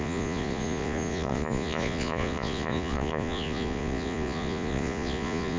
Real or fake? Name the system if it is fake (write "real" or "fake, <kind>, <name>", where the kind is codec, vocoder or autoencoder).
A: fake, vocoder, Vocos